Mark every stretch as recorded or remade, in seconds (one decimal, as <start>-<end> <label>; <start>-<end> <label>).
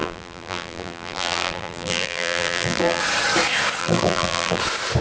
0.0-3.0 remade; 3.0-3.8 recorded; 3.8-4.6 remade; 4.6-5.0 recorded